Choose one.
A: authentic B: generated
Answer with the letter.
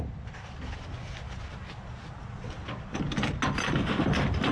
A